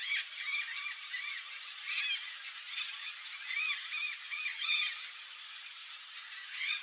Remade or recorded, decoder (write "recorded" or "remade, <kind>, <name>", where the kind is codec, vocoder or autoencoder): recorded